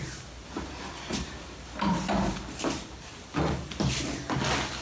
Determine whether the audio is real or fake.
real